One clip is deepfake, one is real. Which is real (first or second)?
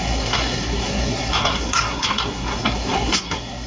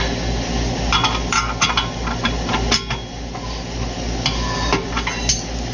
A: second